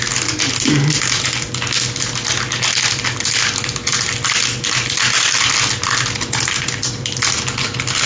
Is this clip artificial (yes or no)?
no